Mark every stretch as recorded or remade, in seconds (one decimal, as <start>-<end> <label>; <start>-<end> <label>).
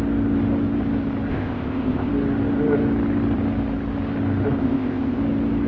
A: 0.0-1.3 recorded; 1.3-2.1 remade; 2.1-4.6 recorded; 4.6-5.2 remade; 5.2-5.7 recorded